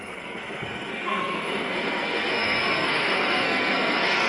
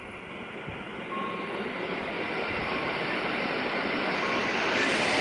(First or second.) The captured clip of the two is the second